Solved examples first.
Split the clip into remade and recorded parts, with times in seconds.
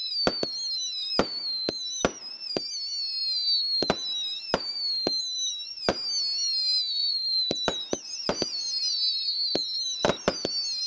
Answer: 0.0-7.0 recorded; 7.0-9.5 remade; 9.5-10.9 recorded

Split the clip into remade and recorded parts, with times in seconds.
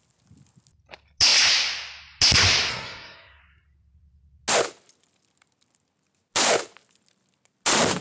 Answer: 0.0-2.7 recorded; 2.7-3.4 remade; 3.4-8.0 recorded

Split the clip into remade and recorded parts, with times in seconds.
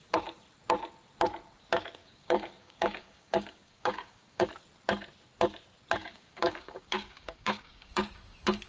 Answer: 0.0-2.0 recorded; 2.0-4.5 remade; 4.5-6.0 recorded; 6.0-8.7 remade